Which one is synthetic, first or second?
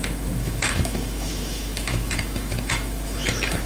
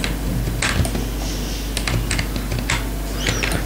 first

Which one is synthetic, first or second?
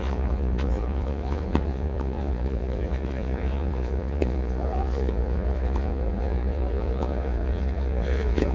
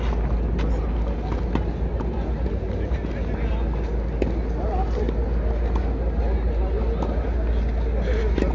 first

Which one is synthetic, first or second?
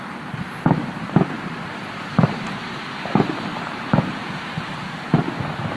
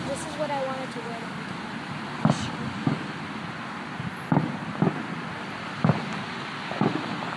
first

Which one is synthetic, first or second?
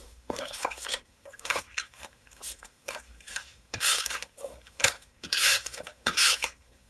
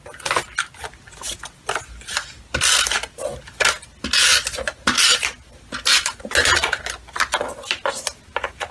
first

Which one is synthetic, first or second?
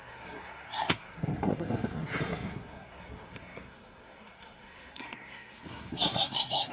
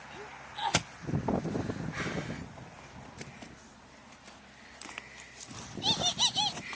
first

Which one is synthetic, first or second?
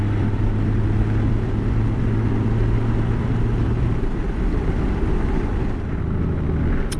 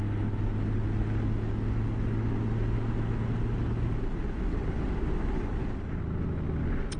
first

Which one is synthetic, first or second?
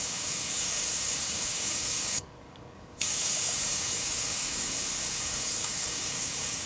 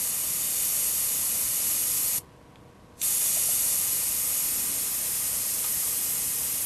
first